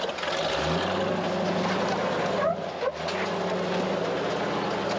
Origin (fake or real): real